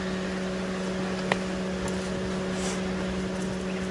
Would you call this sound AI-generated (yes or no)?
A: no